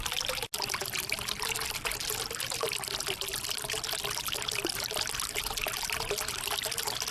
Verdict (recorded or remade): recorded